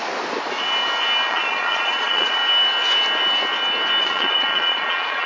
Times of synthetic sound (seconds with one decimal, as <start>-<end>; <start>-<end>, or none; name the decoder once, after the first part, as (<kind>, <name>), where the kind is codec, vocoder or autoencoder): 1.3-2.4 (vocoder, Vocos); 4.0-5.3